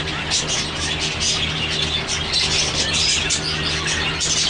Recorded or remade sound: recorded